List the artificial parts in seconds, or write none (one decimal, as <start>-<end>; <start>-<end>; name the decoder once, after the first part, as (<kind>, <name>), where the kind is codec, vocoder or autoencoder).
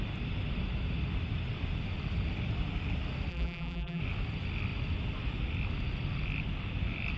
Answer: 3.3-4.0 (vocoder, BigVGAN v2)